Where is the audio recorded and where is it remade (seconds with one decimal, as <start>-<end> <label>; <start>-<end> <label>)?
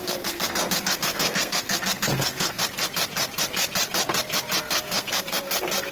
0.0-2.6 remade; 2.6-4.6 recorded; 4.6-5.9 remade